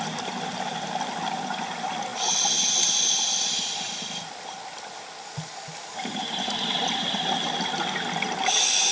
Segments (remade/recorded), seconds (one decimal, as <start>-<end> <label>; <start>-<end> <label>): 0.0-8.9 recorded

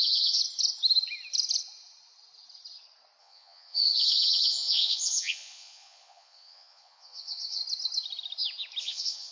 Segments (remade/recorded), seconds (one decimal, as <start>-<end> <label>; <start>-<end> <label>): 0.0-0.4 remade; 0.4-3.2 recorded; 3.2-7.6 remade; 7.6-8.8 recorded; 8.8-9.3 remade